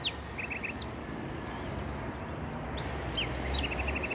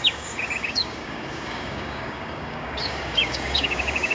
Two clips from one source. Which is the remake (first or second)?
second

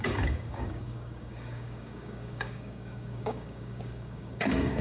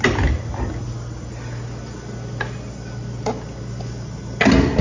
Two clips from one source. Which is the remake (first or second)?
first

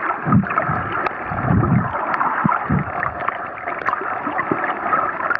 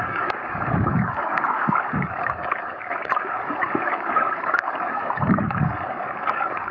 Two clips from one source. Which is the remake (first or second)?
second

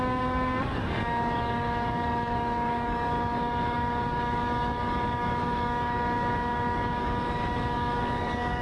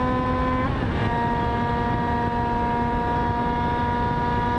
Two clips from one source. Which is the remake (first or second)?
first